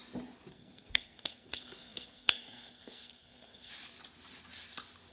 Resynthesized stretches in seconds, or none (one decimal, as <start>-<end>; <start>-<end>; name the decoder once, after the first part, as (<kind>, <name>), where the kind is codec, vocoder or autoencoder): 0.5-3.7 (codec, SNAC)